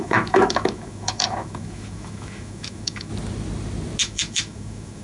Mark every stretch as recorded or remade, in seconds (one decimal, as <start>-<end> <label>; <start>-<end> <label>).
0.0-3.1 remade; 3.1-4.0 recorded; 4.0-5.0 remade